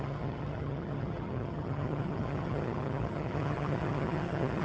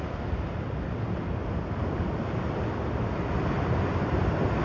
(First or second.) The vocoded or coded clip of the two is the first